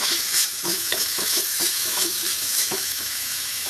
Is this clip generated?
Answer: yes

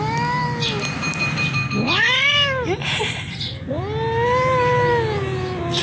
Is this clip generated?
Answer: no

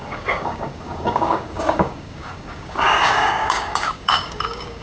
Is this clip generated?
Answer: yes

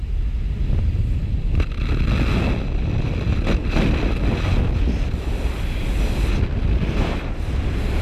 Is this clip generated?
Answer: no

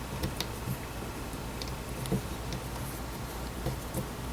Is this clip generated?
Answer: no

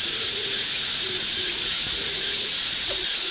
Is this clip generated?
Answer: yes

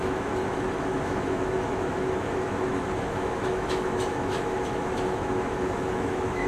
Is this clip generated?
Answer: yes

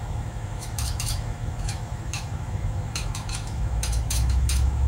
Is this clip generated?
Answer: yes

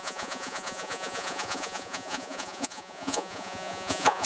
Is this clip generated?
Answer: yes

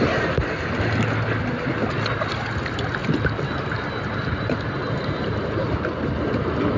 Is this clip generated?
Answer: no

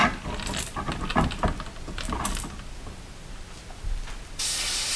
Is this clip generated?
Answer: no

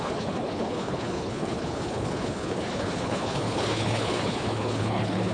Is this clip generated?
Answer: yes